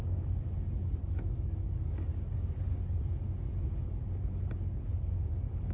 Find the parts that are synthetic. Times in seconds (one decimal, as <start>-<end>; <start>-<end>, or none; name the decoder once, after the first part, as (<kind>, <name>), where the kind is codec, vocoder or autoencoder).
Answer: 0.0-0.4 (codec, DAC); 1.0-2.1; 4.9-5.7